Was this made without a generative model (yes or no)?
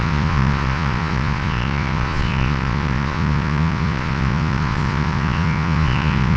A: no